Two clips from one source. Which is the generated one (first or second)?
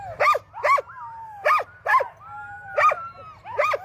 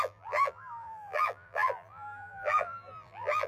second